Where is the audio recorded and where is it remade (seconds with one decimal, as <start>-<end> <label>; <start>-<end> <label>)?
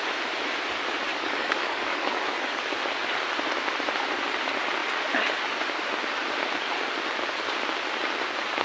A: 0.0-1.1 recorded; 1.1-2.6 remade; 2.6-8.6 recorded